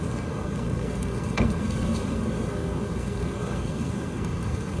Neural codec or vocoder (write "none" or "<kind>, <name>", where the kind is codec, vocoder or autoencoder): codec, SNAC